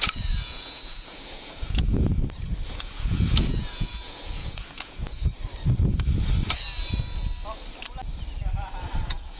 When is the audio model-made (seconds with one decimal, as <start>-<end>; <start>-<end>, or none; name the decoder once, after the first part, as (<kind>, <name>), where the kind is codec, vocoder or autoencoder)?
0.0-2.1 (vocoder, Vocos); 2.7-5.3; 9.0-9.4